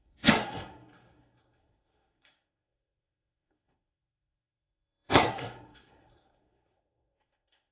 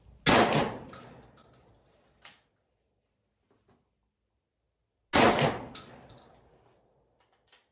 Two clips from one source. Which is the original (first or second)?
second